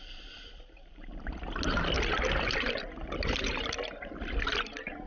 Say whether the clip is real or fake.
real